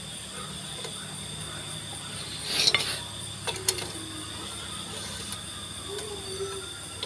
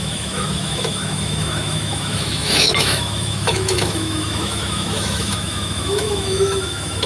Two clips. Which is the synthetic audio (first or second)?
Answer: second